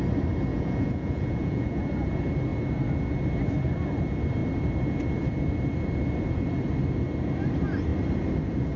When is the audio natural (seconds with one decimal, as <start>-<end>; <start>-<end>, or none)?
0.0-0.5; 1.8-8.8